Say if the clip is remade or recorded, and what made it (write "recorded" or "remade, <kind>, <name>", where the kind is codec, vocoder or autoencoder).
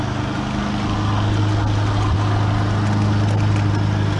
recorded